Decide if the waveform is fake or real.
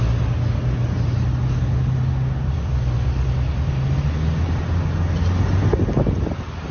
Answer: real